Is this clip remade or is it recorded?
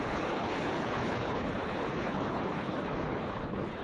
remade